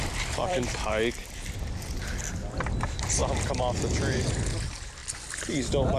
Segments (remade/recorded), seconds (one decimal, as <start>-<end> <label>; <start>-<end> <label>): 0.0-0.4 recorded; 0.4-0.9 remade; 0.9-3.2 recorded; 3.2-4.3 remade; 4.3-5.0 recorded; 5.0-6.0 remade